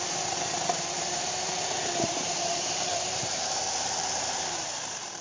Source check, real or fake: fake